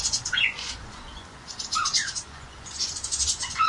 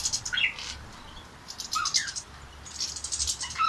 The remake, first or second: first